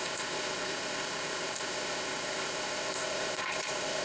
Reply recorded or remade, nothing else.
remade